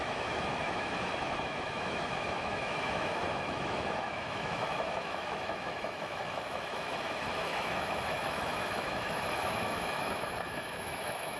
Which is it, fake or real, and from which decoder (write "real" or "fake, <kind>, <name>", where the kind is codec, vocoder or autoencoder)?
fake, autoencoder, DAC-VAE